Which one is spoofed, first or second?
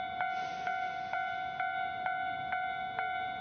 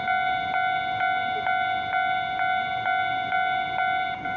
first